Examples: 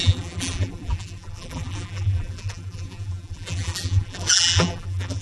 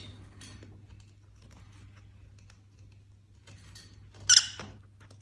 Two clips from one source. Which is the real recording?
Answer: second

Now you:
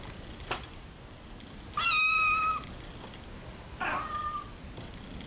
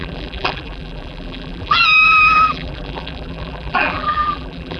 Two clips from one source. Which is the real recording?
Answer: first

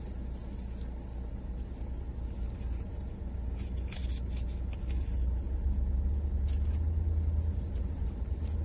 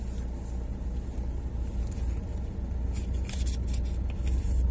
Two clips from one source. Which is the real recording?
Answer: second